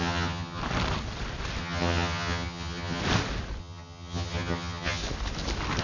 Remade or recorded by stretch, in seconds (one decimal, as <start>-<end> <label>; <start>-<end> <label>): 0.0-0.6 remade; 0.6-1.6 recorded; 1.6-3.0 remade; 3.0-3.6 recorded; 3.6-5.0 remade; 5.0-5.8 recorded